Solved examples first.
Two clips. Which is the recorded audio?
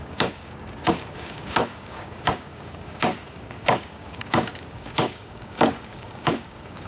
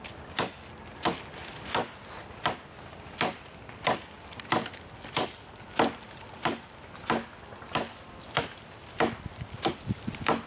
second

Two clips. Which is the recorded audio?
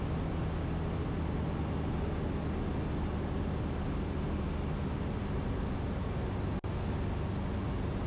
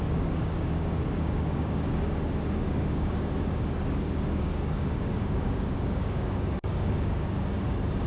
first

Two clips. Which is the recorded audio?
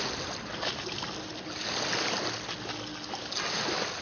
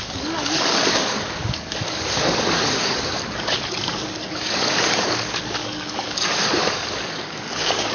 first